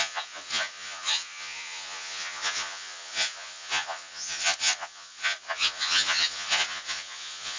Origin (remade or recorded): remade